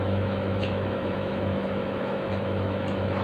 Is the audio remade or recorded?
remade